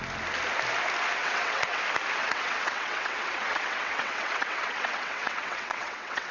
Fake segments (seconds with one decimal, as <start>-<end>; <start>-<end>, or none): 1.2-1.8; 2.2-6.3